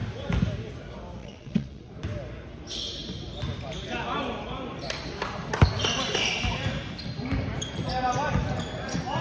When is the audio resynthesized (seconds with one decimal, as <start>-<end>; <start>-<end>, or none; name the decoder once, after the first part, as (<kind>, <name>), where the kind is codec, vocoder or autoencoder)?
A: 1.2-1.9 (vocoder, WaveNeXt)